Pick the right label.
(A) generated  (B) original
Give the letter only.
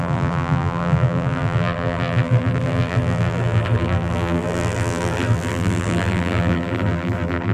A